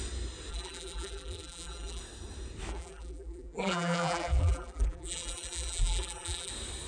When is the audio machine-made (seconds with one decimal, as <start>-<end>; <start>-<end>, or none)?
0.5-2.0; 2.7-6.5

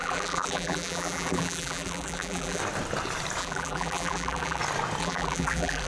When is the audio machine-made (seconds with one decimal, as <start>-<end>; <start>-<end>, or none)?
0.0-2.6; 3.4-4.6; 5.0-5.9

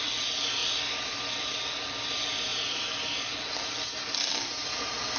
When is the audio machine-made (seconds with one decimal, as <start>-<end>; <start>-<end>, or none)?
2.5-4.3

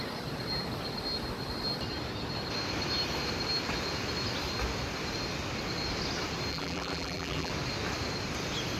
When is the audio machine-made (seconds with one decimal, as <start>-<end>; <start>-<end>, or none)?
6.5-7.5

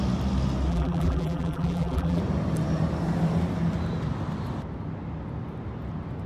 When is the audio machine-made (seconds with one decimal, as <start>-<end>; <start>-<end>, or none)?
0.7-2.2

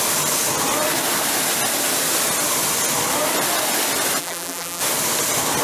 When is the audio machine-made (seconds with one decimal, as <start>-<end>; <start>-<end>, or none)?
4.2-4.8

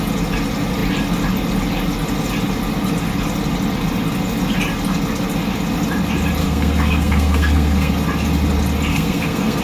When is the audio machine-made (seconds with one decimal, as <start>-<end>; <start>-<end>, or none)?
6.4-7.9; 8.9-9.6